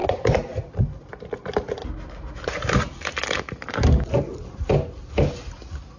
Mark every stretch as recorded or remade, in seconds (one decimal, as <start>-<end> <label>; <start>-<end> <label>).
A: 0.0-1.8 recorded; 1.8-3.4 remade; 3.4-4.1 recorded; 4.1-4.7 remade; 4.7-6.0 recorded